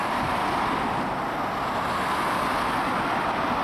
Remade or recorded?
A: recorded